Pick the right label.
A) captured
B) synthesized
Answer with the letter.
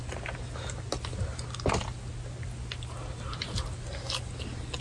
A